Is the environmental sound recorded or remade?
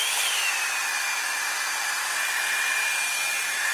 recorded